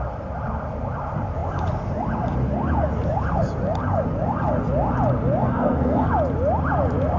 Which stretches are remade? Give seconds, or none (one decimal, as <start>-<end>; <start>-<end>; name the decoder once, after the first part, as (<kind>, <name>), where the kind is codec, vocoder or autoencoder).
5.4-6.1 (codec, SNAC)